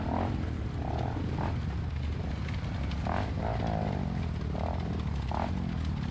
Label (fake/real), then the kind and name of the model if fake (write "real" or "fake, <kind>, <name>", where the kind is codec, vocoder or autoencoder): real